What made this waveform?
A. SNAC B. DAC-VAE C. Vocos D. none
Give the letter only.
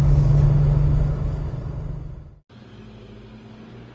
D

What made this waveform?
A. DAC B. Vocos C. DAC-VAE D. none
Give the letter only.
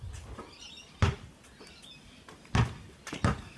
D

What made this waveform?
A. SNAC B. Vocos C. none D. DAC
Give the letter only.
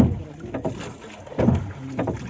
C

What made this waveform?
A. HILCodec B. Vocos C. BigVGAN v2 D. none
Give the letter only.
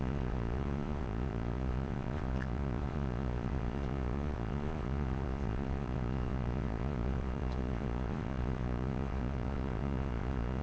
B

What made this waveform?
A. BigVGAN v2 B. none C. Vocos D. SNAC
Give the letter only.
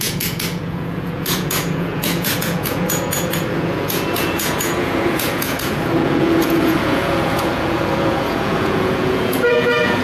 C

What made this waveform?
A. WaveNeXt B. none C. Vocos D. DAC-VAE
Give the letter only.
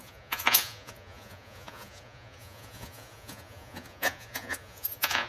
C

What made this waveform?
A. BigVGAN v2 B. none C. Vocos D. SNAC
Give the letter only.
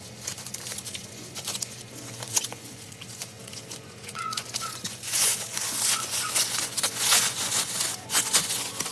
C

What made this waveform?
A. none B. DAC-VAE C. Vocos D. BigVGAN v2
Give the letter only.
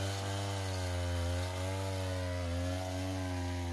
A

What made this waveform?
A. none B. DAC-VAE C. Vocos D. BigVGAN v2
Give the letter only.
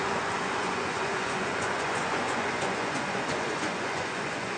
C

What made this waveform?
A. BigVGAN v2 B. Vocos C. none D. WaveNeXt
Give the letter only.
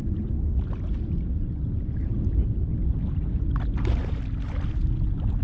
C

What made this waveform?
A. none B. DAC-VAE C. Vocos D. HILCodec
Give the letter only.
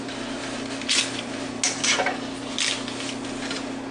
A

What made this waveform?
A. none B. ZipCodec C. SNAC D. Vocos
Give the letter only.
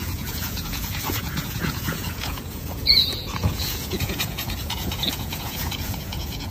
D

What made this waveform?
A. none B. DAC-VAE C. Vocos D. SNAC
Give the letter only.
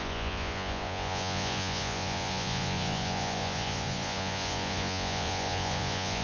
C